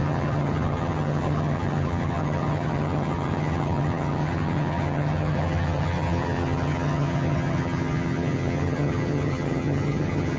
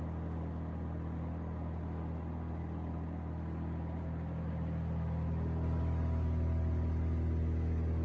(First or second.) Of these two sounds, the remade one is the first